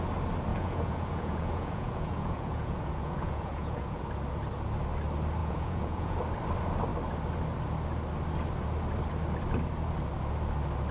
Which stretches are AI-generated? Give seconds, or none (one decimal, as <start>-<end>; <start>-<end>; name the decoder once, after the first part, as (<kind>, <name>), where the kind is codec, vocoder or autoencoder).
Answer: 0.5-4.0 (vocoder, Vocos); 5.4-6.2